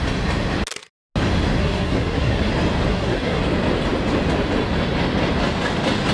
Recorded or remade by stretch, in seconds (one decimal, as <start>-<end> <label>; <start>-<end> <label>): 0.0-1.6 recorded; 1.6-2.5 remade; 2.5-2.9 recorded; 2.9-3.4 remade; 3.4-6.1 recorded